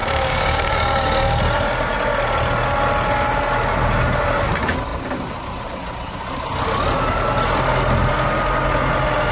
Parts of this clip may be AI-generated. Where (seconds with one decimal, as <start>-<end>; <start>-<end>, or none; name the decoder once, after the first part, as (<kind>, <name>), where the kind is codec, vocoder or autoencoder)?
0.0-1.4 (codec, DAC)